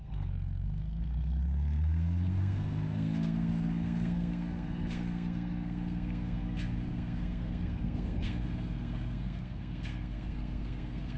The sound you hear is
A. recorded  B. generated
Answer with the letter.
B